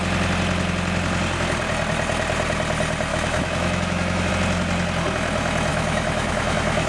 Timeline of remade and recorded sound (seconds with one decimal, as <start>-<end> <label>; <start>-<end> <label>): 0.0-3.1 recorded; 3.1-4.3 remade; 4.3-5.7 recorded; 5.7-6.9 remade